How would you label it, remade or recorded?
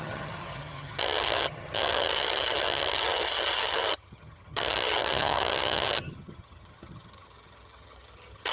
remade